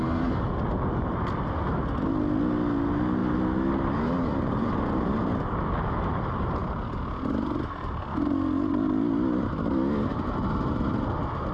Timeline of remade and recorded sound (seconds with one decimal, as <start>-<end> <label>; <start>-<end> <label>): 0.0-11.5 recorded